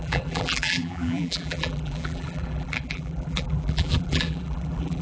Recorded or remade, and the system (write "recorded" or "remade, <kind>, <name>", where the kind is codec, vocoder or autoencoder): remade, vocoder, BigVGAN v2